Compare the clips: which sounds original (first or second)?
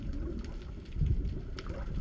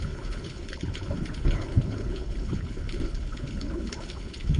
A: first